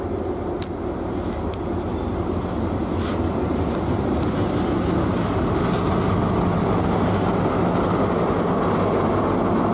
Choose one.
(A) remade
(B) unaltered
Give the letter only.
B